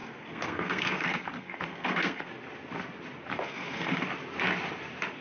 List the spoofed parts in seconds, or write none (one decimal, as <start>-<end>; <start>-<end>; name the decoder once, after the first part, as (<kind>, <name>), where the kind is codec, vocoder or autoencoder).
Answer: 0.0-2.3 (codec, SNAC); 3.3-4.0

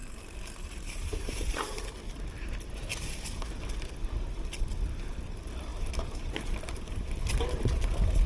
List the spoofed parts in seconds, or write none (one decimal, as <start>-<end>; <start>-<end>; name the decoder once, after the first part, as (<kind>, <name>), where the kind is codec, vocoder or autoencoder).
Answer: 0.0-1.8 (vocoder, BigVGAN v2); 5.7-7.0

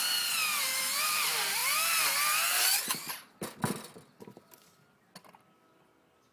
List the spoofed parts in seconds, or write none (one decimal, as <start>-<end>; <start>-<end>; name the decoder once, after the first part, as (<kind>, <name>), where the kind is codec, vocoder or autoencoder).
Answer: none

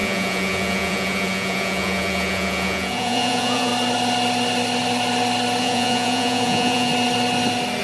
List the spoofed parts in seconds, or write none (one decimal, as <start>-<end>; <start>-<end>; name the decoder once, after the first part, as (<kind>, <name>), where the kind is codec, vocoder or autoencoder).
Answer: 0.0-3.7 (vocoder, Vocos); 5.6-6.9

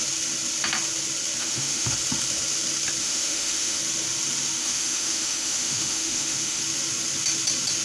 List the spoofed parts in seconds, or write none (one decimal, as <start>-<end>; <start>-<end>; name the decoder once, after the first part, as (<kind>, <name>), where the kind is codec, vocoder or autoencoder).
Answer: 1.4-1.9 (autoencoder, DAC-VAE); 3.0-3.8; 4.6-6.6

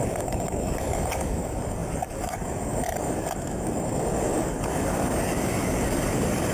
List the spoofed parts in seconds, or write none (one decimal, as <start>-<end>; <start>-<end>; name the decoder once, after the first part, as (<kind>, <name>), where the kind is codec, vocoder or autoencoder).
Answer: 0.0-6.5 (codec, DAC)

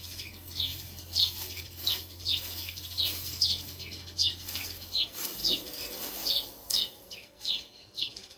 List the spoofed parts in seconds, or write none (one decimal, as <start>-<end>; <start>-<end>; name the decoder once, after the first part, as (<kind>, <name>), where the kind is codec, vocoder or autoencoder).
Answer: 0.0-8.4 (codec, SNAC)